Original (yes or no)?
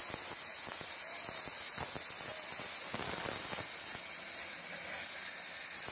yes